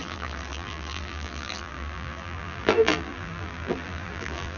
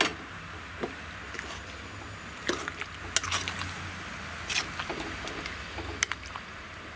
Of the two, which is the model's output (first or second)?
first